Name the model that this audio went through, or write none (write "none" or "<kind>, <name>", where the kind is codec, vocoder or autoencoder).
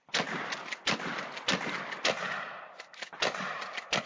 none